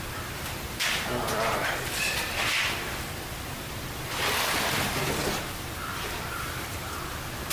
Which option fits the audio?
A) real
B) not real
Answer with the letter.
B